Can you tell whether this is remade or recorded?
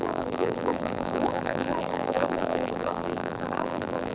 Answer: remade